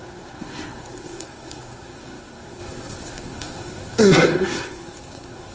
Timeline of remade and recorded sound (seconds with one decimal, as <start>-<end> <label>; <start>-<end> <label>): 0.0-5.5 remade

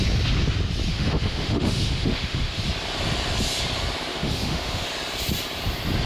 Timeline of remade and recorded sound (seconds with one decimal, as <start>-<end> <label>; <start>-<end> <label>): 0.0-0.9 recorded; 0.9-2.6 remade; 2.6-4.1 recorded; 4.1-4.9 remade; 4.9-6.1 recorded

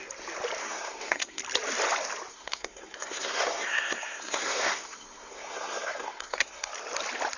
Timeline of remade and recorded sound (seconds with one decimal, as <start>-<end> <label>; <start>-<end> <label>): 0.0-0.6 recorded; 0.6-1.4 remade; 1.4-2.3 recorded; 2.3-6.7 remade; 6.7-7.4 recorded